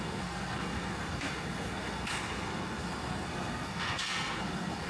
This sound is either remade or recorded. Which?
remade